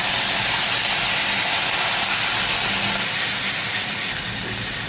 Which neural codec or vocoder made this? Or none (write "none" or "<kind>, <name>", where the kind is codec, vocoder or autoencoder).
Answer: none